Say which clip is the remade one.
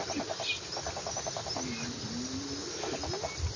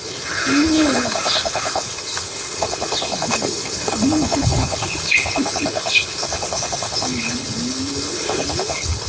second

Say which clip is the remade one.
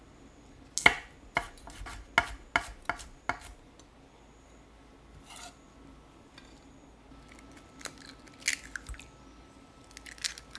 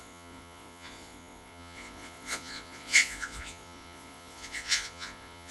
second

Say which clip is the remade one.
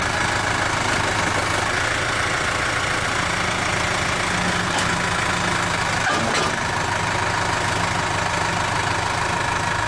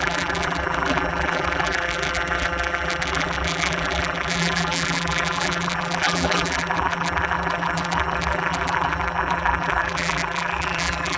second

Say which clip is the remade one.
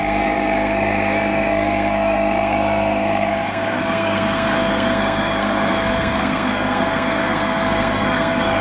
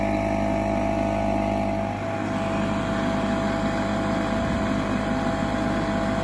first